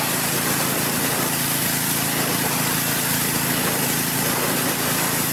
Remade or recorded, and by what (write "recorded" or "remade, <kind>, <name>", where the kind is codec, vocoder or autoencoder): recorded